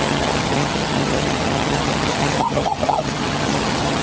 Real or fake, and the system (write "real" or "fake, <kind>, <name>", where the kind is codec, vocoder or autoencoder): fake, vocoder, HiFi-GAN